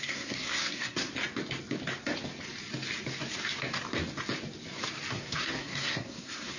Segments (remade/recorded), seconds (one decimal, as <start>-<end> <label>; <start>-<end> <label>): 0.0-1.1 remade; 1.1-5.1 recorded; 5.1-6.6 remade

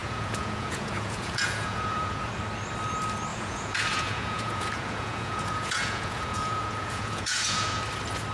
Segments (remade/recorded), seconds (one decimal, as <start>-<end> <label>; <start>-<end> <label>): 0.0-2.3 remade; 2.3-3.3 recorded; 3.3-7.8 remade; 7.8-8.3 recorded

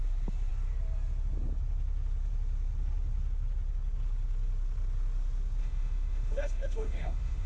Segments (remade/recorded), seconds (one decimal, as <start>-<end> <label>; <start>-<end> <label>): 0.0-5.6 recorded; 5.6-7.5 remade

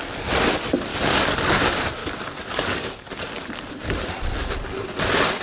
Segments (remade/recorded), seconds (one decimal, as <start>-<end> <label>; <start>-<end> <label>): 0.0-0.9 recorded; 0.9-1.6 remade; 1.6-2.0 recorded; 2.0-3.1 remade; 3.1-5.4 recorded